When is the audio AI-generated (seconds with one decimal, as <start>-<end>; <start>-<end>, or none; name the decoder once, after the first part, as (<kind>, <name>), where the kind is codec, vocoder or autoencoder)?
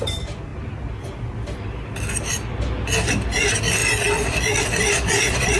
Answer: 0.0-0.5 (vocoder, BigVGAN v2); 3.4-3.8; 4.6-5.6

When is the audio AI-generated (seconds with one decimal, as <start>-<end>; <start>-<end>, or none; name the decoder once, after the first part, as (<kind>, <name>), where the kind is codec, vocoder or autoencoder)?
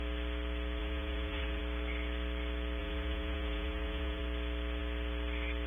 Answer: 0.8-1.6 (vocoder, Vocos); 2.8-4.2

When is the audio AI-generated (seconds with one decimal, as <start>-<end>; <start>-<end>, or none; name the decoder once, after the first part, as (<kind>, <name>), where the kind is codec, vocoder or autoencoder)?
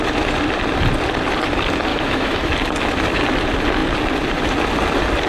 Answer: 1.9-2.5 (autoencoder, DAC-VAE)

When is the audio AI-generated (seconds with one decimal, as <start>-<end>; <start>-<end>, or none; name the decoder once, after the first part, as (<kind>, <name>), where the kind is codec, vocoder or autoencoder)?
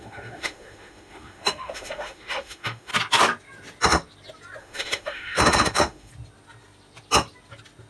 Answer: 0.0-2.9 (autoencoder, DAC-VAE); 4.6-6.1